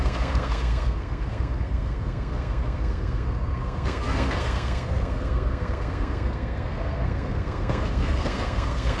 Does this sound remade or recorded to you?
remade